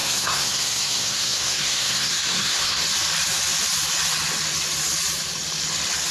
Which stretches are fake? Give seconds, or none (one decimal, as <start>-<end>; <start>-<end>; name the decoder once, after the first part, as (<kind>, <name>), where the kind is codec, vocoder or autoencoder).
0.0-2.8 (codec, SNAC)